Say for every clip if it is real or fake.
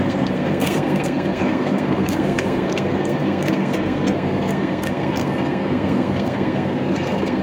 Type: fake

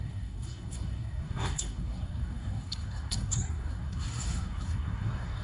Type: fake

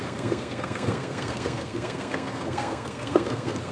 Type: fake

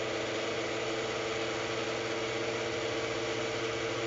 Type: real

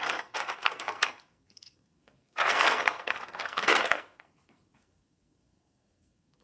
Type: fake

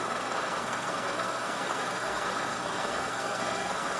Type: fake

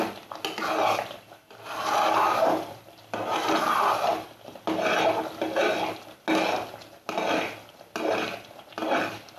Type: real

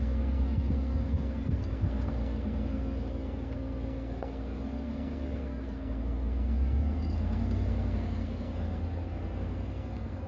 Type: fake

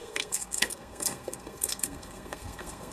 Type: fake